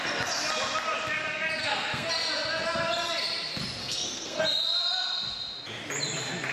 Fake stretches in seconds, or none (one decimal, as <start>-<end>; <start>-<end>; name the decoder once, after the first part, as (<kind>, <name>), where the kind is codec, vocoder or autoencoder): 1.6-2.1 (codec, SNAC); 3.8-4.4